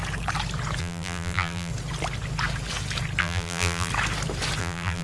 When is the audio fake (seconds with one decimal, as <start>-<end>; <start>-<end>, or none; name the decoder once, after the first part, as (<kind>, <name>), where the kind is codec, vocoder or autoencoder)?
0.8-1.7 (vocoder, BigVGAN v2); 3.2-3.9; 4.6-5.0